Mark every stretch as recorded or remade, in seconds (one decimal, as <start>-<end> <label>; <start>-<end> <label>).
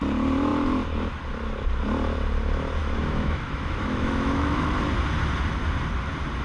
0.0-2.8 recorded; 2.8-4.7 remade; 4.7-6.4 recorded